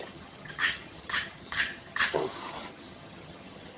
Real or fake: fake